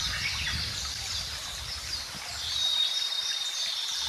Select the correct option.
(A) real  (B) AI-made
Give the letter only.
A